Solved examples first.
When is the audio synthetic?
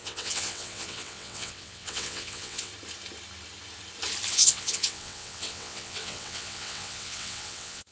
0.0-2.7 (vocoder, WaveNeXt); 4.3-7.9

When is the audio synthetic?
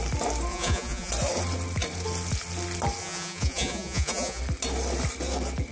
0.5-1.1 (vocoder, Vocos); 3.0-4.4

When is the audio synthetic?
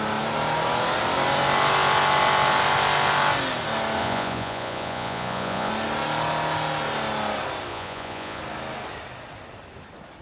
4.0-5.7 (vocoder, Vocos); 7.7-8.4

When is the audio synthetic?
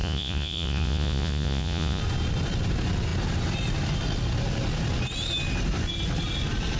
0.0-2.0 (vocoder, Vocos)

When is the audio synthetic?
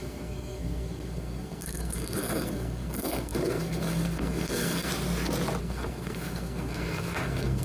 0.0-4.9 (codec, SNAC); 5.6-7.6